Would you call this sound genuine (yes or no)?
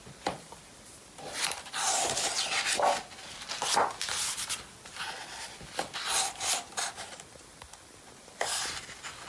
yes